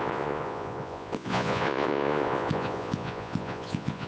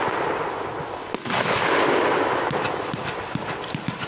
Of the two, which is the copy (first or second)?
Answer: first